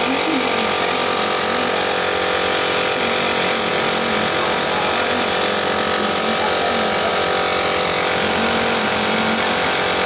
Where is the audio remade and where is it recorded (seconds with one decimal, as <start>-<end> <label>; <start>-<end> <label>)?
0.0-10.1 recorded